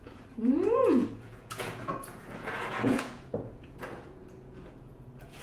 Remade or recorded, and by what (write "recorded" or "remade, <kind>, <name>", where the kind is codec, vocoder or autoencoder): remade, vocoder, Vocos